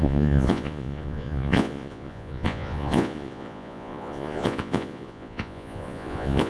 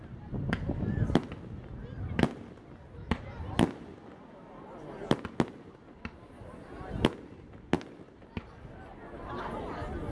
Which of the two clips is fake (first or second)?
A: first